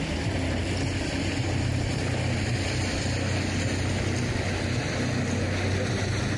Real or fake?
real